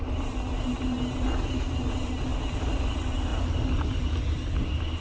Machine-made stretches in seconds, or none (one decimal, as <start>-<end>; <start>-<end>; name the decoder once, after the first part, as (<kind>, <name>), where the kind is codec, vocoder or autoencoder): none